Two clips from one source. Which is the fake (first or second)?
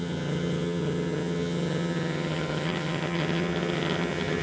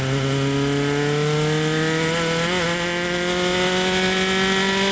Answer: first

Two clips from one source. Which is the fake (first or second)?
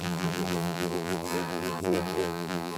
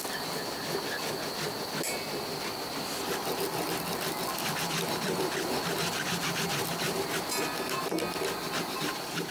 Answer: first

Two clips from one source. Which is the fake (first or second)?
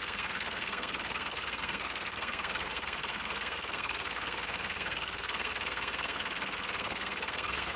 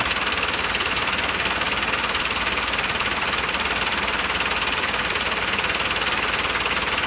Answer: first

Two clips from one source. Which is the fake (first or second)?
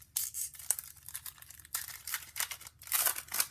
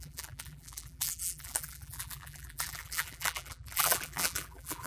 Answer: second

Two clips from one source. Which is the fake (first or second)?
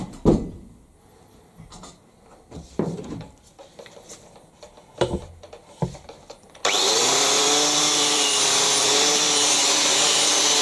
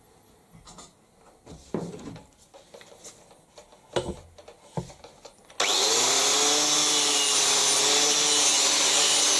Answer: first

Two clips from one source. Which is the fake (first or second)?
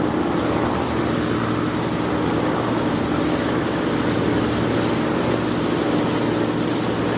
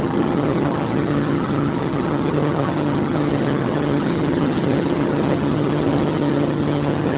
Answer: second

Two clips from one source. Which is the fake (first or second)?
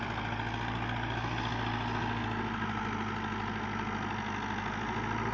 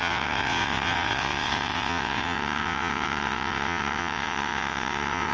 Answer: second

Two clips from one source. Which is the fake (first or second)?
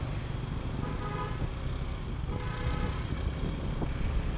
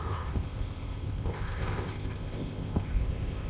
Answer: second